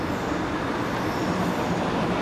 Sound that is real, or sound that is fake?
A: real